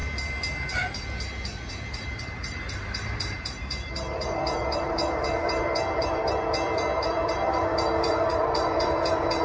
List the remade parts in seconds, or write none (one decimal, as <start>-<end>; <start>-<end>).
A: 1.7-9.4